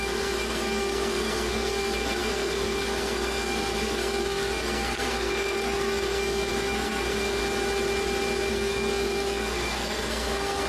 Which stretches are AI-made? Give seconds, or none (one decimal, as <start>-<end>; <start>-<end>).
0.0-7.4; 8.5-10.7